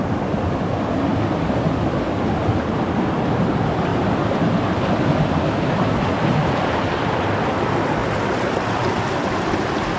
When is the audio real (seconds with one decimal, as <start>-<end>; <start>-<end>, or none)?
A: 0.0-10.0